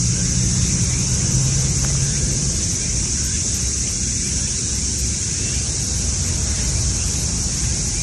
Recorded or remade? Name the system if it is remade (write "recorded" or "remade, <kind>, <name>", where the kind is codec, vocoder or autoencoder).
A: recorded